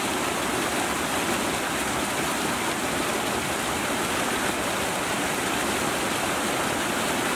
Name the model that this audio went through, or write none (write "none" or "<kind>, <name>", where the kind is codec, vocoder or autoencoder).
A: none